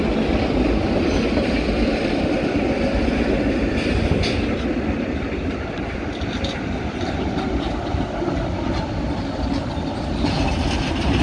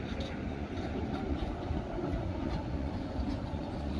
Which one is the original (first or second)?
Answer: first